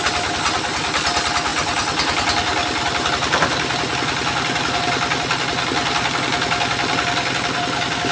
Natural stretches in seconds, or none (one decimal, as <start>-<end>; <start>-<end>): 0.0-8.1